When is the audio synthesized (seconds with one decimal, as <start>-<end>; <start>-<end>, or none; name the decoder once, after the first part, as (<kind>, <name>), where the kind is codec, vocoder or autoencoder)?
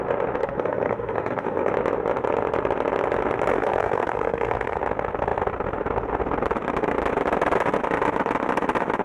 0.4-1.7 (codec, SNAC); 3.5-4.8